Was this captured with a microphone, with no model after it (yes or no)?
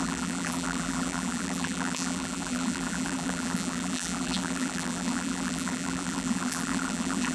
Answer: no